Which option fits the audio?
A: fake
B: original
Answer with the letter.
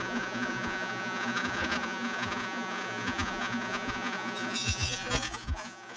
A